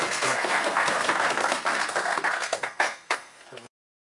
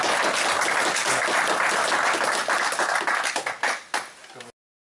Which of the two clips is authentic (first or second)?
second